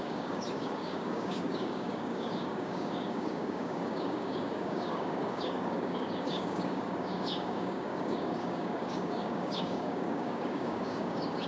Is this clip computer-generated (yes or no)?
yes